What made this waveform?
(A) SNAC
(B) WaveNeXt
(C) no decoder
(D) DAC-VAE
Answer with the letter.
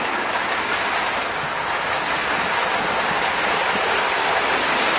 C